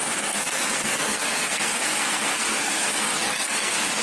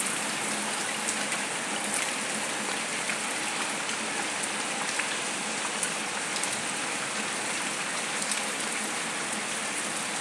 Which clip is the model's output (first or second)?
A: first